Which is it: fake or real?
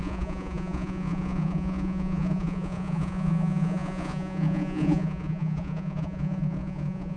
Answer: fake